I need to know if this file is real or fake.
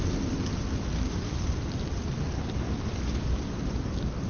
fake